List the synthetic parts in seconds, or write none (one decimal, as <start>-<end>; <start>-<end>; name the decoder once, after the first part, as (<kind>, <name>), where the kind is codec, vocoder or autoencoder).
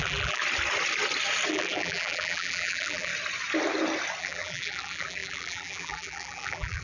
0.0-0.4 (vocoder, BigVGAN v2); 1.5-3.1; 4.2-6.8